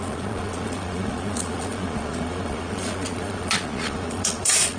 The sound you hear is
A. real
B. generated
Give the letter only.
B